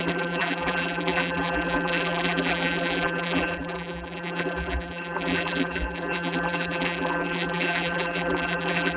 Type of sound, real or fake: fake